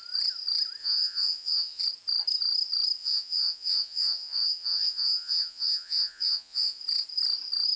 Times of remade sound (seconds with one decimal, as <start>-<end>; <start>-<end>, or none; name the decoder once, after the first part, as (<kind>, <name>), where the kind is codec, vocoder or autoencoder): 0.8-1.8 (vocoder, Vocos); 3.0-6.8